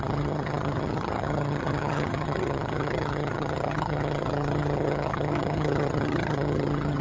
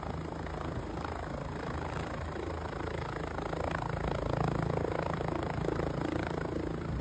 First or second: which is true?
second